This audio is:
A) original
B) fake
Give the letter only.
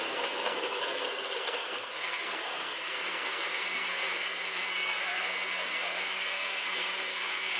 B